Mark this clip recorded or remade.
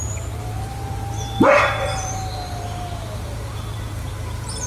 remade